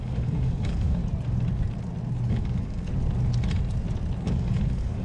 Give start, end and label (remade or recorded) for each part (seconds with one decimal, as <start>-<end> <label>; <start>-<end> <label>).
0.0-1.0 remade; 1.0-2.3 recorded; 2.3-2.9 remade; 2.9-4.2 recorded; 4.2-5.0 remade